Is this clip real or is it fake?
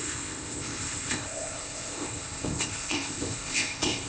fake